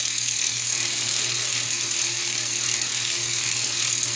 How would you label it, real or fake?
fake